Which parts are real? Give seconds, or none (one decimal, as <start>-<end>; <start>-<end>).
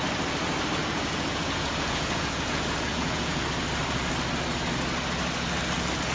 0.0-0.8; 3.4-6.1